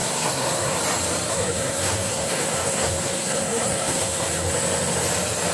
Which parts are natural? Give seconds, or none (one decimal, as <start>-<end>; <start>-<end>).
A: 0.8-1.3; 4.5-5.5